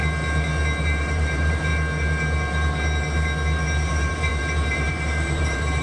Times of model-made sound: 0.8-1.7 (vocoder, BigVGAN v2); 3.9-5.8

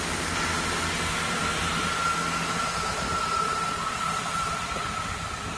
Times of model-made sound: 0.0-1.4 (vocoder, BigVGAN v2); 4.3-5.6

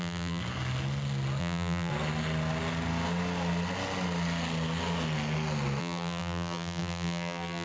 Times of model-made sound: 0.0-0.4 (vocoder, BigVGAN v2); 1.4-1.9; 5.8-7.6

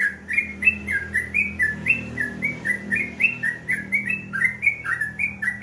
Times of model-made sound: 0.0-5.6 (vocoder, BigVGAN v2)

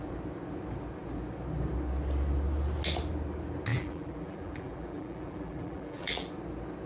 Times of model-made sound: 3.7-6.3 (vocoder, BigVGAN v2)

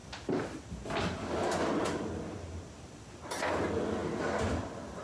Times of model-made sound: none